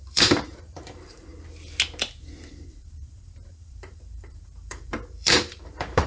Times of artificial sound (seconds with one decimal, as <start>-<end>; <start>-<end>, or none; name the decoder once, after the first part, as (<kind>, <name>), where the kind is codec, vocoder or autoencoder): 0.0-1.3 (vocoder, BigVGAN v2); 2.5-6.1